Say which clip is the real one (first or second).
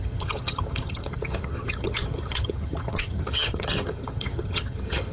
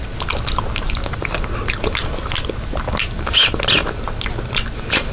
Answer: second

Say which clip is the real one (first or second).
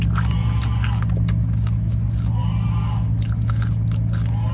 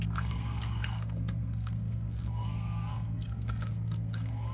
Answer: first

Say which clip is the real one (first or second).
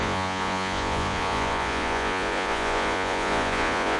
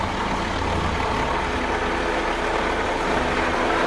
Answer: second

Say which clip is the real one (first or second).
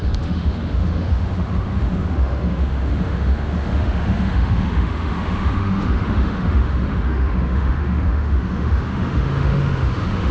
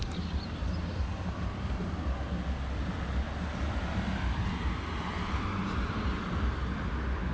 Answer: second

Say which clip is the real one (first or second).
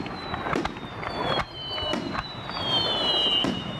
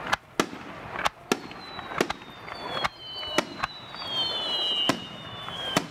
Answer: second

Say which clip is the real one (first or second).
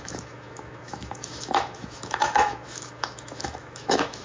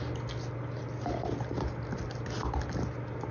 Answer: second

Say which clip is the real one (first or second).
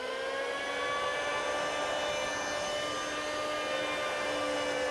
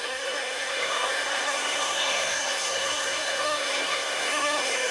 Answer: first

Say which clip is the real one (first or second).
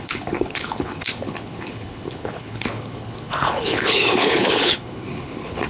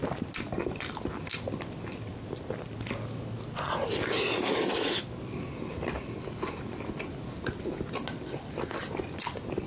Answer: second